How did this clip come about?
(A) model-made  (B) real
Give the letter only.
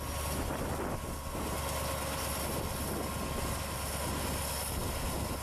B